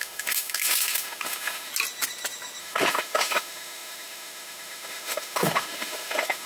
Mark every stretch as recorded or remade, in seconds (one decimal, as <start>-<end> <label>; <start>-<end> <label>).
0.0-1.7 remade; 1.7-2.6 recorded; 2.6-6.5 remade